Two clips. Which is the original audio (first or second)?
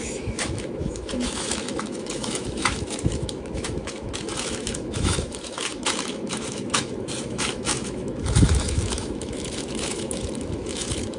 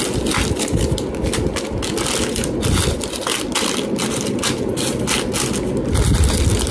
second